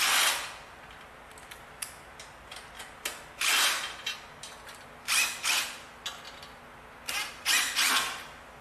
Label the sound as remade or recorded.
recorded